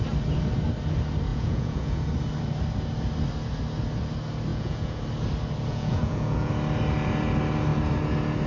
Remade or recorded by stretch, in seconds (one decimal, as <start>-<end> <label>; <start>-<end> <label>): 0.0-1.3 recorded; 1.3-2.0 remade; 2.0-4.5 recorded; 4.5-5.0 remade; 5.0-5.7 recorded; 5.7-6.5 remade; 6.5-8.5 recorded

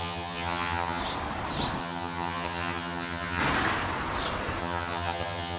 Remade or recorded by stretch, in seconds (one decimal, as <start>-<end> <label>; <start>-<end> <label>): 0.0-1.0 remade; 1.0-1.8 recorded; 1.8-3.4 remade; 3.4-4.6 recorded; 4.6-5.6 remade

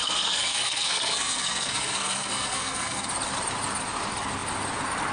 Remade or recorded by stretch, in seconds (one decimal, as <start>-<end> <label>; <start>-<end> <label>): 0.0-3.1 remade; 3.1-5.1 recorded

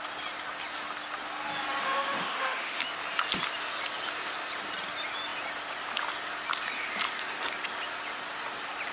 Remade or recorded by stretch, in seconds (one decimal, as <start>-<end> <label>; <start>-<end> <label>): 0.0-1.8 recorded; 1.8-2.8 remade; 2.8-8.9 recorded

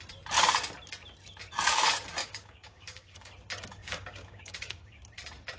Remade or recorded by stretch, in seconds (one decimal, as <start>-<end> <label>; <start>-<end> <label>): 0.0-2.2 recorded; 2.2-3.3 remade; 3.3-3.8 recorded; 3.8-5.0 remade; 5.0-5.6 recorded

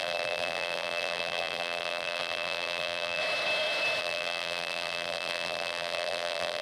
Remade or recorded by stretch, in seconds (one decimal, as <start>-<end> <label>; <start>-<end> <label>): 0.0-3.2 remade; 3.2-4.0 recorded; 4.0-6.6 remade